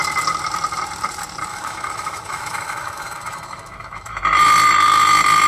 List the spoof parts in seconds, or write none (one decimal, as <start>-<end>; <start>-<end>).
1.5-4.2